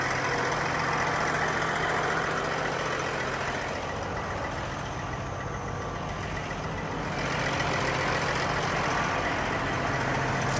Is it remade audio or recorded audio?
recorded